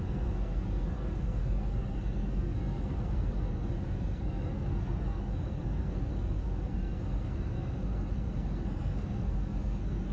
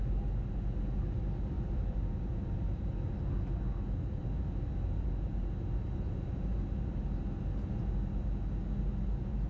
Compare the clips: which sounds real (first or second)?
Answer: second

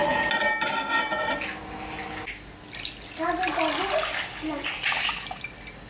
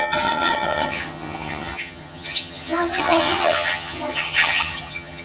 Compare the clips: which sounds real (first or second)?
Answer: first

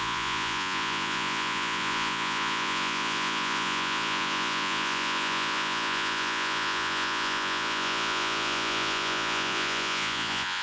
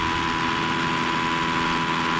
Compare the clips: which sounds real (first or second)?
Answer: second